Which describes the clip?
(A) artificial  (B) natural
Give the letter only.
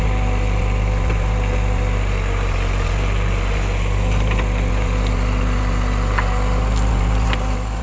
B